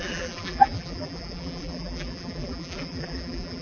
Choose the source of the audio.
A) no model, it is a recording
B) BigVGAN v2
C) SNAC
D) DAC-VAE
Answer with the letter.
B